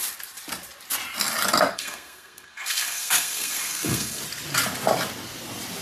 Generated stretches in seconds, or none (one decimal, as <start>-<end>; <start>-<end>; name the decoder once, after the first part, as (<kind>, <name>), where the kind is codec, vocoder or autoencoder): 1.7-4.2 (codec, SNAC)